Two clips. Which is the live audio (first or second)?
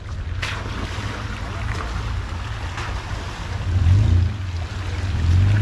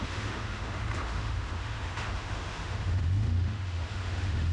first